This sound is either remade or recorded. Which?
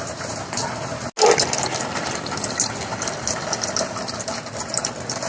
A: recorded